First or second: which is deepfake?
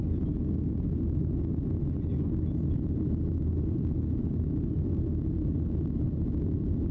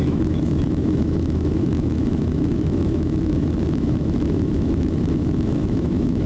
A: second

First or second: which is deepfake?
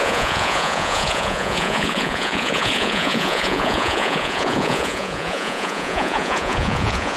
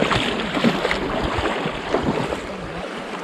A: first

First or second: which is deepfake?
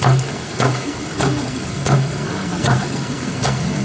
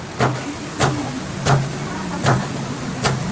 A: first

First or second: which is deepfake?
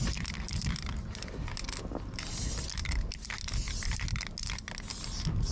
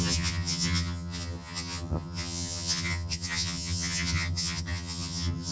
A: second